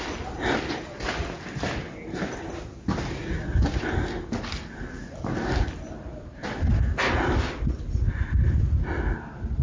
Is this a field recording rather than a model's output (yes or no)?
yes